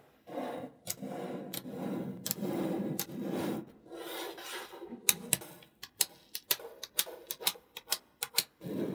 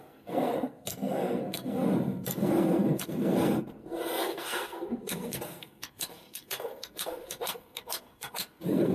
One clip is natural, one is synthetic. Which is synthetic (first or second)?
second